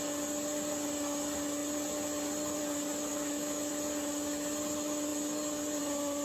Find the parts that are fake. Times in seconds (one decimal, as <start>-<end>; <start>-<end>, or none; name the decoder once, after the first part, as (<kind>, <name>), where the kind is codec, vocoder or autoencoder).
3.1-3.7 (autoencoder, DAC-VAE)